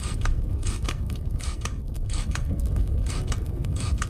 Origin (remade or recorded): remade